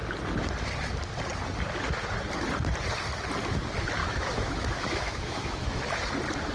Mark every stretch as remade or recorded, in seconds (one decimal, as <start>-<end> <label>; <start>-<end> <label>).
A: 0.0-4.0 recorded; 4.0-5.8 remade; 5.8-6.5 recorded

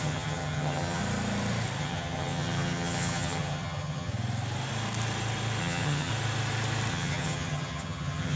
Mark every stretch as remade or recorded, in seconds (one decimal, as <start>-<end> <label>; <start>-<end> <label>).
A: 0.0-1.0 remade; 1.0-1.8 recorded; 1.8-4.1 remade; 4.1-5.6 recorded; 5.6-6.1 remade; 6.1-6.9 recorded; 6.9-8.4 remade

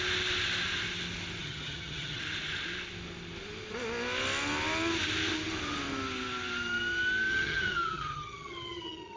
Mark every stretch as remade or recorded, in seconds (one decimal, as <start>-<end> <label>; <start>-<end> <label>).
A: 0.0-1.4 recorded; 1.4-2.2 remade; 2.2-7.3 recorded; 7.3-9.2 remade